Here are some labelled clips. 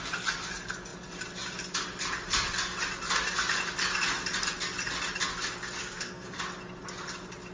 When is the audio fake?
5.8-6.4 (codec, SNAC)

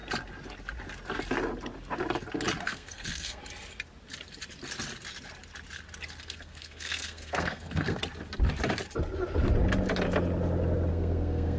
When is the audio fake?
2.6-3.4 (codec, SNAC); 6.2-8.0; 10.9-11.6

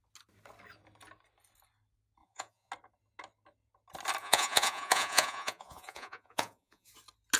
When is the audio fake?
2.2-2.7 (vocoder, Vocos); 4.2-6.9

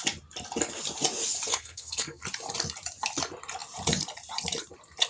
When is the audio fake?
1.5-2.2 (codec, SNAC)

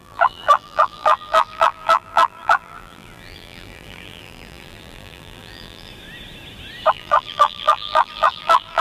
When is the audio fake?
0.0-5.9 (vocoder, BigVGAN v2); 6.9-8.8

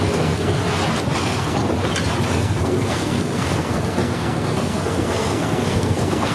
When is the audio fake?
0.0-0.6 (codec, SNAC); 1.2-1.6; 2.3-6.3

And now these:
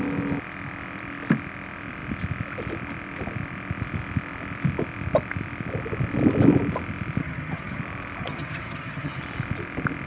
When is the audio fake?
7.2-7.8 (vocoder, HiFi-GAN); 8.2-9.2